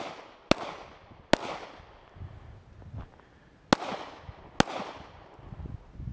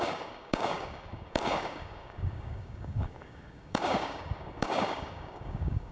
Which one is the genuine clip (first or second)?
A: first